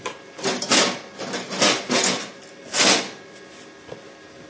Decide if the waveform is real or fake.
real